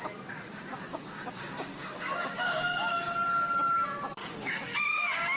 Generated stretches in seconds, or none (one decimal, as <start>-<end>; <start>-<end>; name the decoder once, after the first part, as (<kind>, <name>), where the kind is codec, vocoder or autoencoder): 0.9-2.9 (codec, DAC); 4.2-5.4